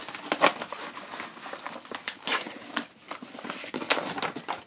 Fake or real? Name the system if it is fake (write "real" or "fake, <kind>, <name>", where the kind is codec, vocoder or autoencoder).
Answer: real